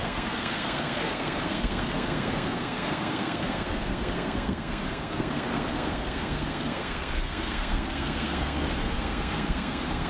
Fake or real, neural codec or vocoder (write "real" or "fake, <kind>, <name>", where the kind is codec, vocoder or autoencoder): fake, codec, SNAC